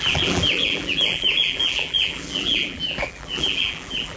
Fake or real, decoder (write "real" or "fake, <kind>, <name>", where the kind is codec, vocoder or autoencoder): fake, vocoder, BigVGAN v2